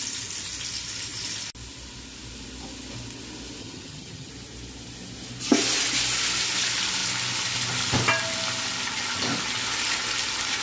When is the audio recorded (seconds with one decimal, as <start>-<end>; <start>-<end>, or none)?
0.0-3.6; 4.3-10.6